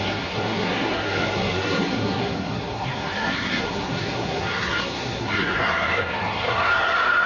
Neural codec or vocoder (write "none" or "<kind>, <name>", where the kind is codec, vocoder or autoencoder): codec, SNAC